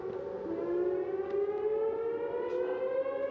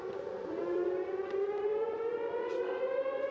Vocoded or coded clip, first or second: second